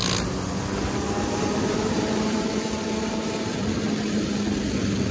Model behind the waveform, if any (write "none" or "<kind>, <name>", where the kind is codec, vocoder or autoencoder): none